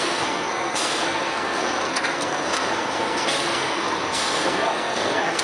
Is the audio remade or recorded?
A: remade